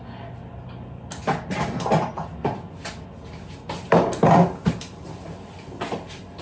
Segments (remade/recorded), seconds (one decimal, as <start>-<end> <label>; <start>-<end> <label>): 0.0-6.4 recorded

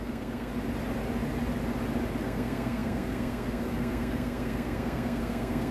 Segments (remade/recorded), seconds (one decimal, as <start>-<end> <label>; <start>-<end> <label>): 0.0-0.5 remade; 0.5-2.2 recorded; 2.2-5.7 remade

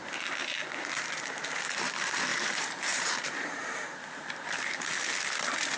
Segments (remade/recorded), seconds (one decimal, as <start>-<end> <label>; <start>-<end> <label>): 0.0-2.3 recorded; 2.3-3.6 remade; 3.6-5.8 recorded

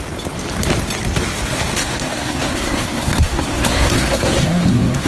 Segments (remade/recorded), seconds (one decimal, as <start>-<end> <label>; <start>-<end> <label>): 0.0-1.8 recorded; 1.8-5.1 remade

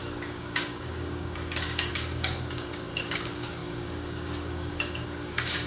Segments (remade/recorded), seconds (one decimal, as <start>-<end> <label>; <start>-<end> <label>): 0.0-5.7 remade

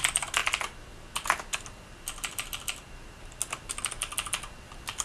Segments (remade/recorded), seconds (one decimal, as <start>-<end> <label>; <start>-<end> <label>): 0.0-5.0 recorded

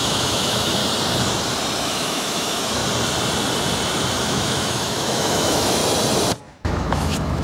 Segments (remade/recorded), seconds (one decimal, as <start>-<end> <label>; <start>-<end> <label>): 0.0-0.8 remade; 0.8-1.8 recorded; 1.8-2.8 remade; 2.8-4.2 recorded; 4.2-5.8 remade; 5.8-6.4 recorded; 6.4-7.4 remade